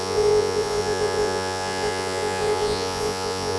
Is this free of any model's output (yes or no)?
no